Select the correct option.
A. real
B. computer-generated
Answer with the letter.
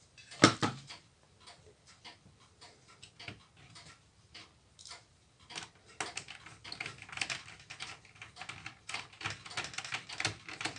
A